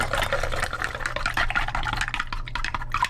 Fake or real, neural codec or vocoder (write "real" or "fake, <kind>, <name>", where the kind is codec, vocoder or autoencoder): real